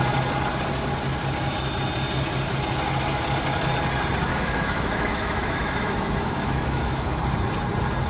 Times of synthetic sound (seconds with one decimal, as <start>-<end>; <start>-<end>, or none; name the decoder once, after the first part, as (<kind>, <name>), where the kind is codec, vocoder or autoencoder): 4.3-7.2 (autoencoder, DAC-VAE)